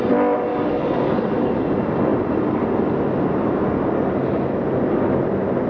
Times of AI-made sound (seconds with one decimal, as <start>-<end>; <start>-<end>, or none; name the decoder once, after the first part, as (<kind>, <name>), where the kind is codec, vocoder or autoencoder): 0.5-1.6 (codec, DAC)